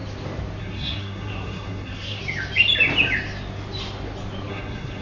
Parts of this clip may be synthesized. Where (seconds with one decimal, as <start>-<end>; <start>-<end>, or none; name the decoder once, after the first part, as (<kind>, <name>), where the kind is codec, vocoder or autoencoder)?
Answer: 0.6-2.2 (codec, SNAC); 4.5-5.0